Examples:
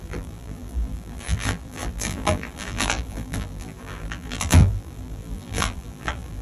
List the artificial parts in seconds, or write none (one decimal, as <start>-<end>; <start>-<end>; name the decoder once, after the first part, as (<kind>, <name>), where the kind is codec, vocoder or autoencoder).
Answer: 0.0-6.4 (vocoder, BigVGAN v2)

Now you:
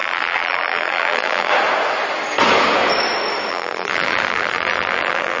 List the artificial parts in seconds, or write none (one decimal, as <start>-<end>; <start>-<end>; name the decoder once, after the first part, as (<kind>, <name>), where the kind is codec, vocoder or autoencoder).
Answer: 0.0-1.5 (vocoder, BigVGAN v2); 3.5-5.4

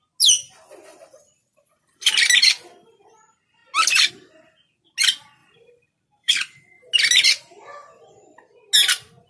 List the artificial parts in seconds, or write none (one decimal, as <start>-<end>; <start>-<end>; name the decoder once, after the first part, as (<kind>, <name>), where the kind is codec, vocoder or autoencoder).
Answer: 0.9-2.1 (vocoder, BigVGAN v2); 5.4-6.3